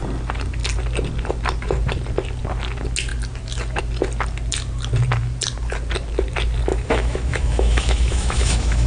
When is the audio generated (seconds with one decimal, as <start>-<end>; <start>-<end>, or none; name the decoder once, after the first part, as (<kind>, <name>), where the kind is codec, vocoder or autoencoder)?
6.7-8.9 (autoencoder, DAC-VAE)